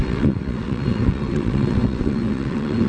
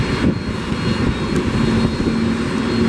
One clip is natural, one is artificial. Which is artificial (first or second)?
first